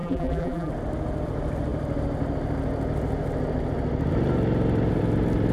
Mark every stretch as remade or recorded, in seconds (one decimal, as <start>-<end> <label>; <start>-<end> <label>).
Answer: 0.0-0.7 remade; 0.7-5.5 recorded